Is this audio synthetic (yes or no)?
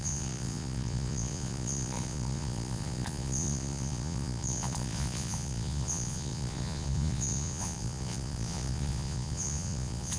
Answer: yes